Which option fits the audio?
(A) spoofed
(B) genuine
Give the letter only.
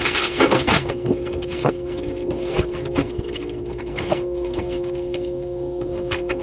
A